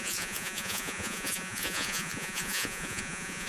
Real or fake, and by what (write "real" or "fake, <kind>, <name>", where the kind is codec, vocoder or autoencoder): fake, vocoder, Vocos